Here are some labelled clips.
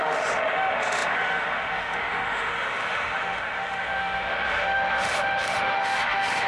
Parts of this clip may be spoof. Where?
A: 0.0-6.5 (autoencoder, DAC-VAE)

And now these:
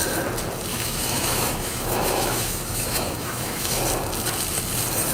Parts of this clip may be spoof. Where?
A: 0.7-3.8 (autoencoder, DAC-VAE)